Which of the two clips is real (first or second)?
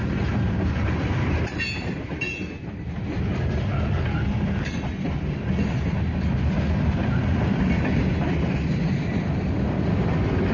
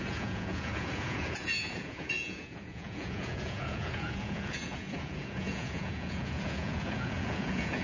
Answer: first